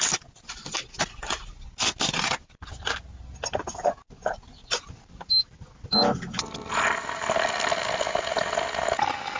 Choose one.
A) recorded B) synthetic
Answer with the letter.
A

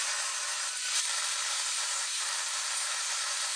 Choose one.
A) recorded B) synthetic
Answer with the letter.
B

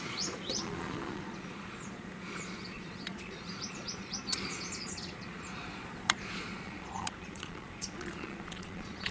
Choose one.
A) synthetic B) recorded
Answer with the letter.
A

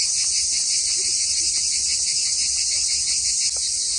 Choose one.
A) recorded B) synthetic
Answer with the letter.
A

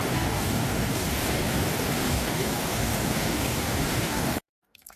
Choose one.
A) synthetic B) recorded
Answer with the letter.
A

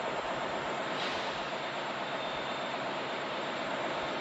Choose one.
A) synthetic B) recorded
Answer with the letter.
A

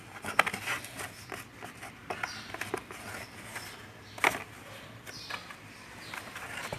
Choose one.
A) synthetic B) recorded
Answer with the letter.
B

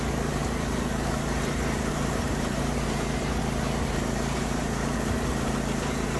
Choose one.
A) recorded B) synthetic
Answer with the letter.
B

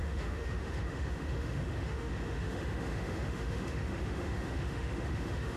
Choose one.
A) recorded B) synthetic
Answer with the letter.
B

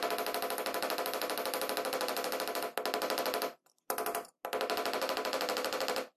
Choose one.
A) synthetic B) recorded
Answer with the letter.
B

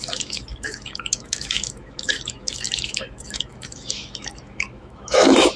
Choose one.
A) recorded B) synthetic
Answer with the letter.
B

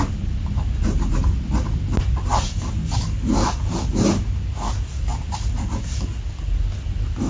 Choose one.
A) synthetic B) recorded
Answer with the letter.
B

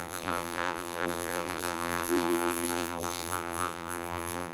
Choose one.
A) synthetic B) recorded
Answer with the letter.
A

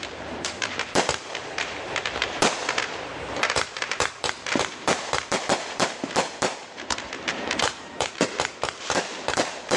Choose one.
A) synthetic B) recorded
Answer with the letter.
A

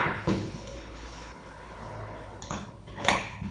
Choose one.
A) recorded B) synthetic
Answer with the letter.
B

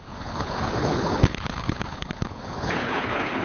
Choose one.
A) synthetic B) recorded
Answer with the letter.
A